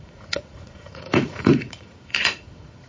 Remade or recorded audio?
remade